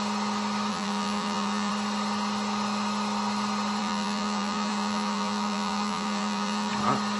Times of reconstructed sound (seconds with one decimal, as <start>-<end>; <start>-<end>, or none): 0.7-1.7; 3.8-6.7